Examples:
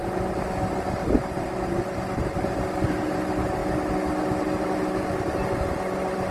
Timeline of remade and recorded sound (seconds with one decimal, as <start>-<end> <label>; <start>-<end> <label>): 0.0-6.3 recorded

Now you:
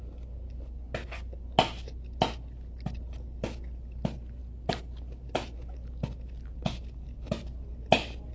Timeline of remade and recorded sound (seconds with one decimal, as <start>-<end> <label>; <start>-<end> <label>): 0.0-8.3 recorded

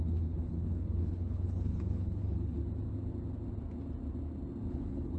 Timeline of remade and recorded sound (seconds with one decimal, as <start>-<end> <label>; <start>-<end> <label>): 0.0-2.6 remade; 2.6-4.7 recorded; 4.7-5.2 remade